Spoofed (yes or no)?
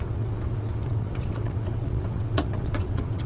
yes